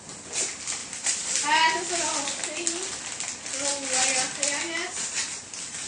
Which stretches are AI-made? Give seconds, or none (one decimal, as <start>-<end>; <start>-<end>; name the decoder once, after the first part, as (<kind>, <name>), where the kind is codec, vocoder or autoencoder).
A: 0.8-1.9 (vocoder, BigVGAN v2); 3.7-4.9